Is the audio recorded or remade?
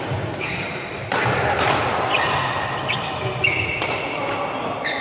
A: recorded